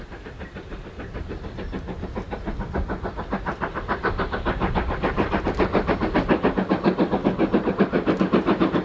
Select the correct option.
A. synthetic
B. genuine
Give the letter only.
B